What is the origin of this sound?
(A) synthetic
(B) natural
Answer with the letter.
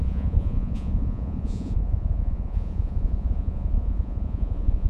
A